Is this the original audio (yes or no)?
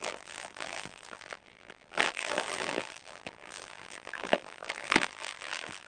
no